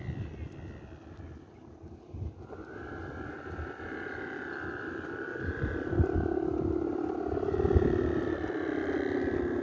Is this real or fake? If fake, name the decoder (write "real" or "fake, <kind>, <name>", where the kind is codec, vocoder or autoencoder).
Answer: real